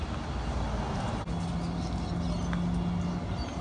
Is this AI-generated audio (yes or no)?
no